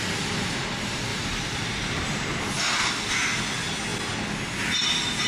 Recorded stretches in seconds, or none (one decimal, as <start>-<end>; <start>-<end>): 0.0-1.1; 2.5-5.3